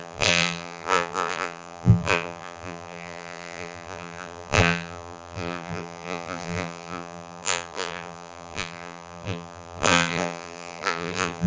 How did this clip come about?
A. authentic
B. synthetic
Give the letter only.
B